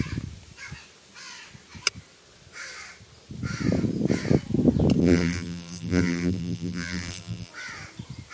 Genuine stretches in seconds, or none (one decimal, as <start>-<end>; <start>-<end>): 0.0-5.0; 7.5-8.3